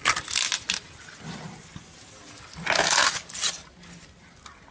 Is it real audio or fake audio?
real